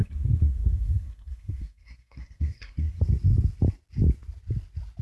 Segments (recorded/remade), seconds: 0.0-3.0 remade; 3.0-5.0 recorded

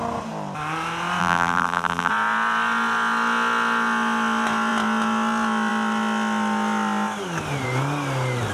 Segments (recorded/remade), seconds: 0.0-1.2 recorded; 1.2-2.1 remade; 2.1-8.5 recorded